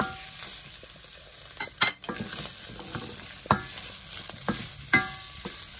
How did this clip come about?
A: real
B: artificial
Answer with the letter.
A